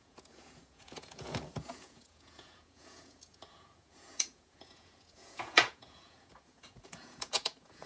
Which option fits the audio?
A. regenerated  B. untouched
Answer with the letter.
A